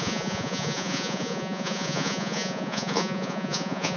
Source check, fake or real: fake